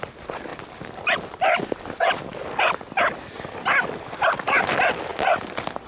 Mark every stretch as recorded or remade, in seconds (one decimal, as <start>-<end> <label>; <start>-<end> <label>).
0.0-5.9 recorded

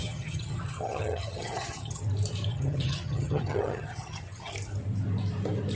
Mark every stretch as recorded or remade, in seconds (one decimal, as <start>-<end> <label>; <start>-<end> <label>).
0.0-2.0 remade; 2.0-2.5 recorded; 2.5-4.5 remade; 4.5-5.8 recorded